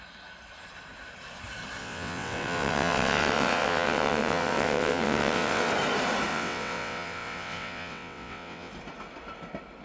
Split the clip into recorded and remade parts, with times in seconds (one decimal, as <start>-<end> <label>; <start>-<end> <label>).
0.0-1.8 recorded; 1.8-5.7 remade; 5.7-6.3 recorded; 6.3-8.7 remade; 8.7-9.8 recorded